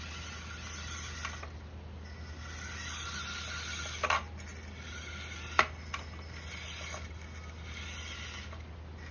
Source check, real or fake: real